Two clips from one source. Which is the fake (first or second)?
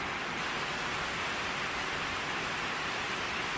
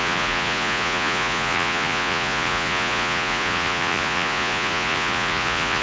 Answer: second